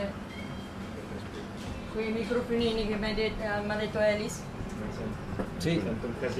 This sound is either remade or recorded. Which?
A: recorded